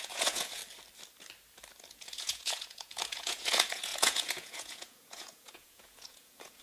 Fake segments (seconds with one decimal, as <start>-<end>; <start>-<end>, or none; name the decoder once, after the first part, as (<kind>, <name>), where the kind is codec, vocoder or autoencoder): 0.0-0.6 (vocoder, Vocos); 1.9-6.6

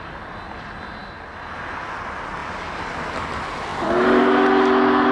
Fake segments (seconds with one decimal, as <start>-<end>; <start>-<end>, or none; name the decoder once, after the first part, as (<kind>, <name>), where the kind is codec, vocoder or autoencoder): none

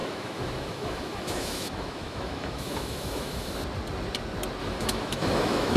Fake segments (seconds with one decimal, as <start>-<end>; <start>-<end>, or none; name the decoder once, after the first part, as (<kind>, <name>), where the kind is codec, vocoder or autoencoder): 0.0-3.5 (autoencoder, DAC-VAE); 4.6-5.8

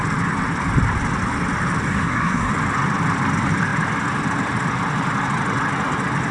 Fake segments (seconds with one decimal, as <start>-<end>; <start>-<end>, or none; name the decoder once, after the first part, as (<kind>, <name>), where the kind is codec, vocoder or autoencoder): 1.9-2.5 (codec, SNAC)

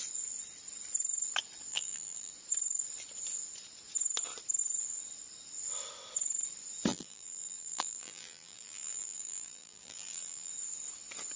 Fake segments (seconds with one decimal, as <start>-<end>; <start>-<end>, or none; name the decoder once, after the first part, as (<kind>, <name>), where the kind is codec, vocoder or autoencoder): 1.7-2.3 (vocoder, BigVGAN v2); 6.9-10.5